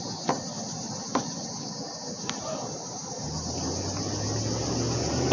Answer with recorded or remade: recorded